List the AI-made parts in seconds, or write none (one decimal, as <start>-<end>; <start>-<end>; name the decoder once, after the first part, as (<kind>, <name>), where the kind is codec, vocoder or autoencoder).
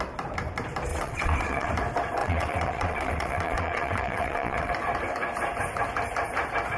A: 0.9-1.7 (vocoder, WaveNeXt); 2.2-4.7